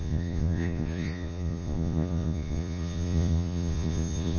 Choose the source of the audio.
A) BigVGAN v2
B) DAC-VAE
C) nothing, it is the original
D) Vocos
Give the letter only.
D